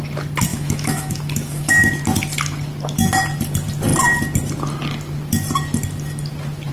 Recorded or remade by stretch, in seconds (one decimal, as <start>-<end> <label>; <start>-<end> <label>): 0.0-0.5 recorded; 0.5-1.9 remade; 1.9-6.7 recorded